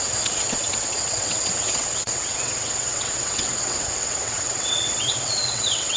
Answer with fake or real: fake